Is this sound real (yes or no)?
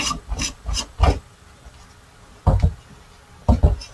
yes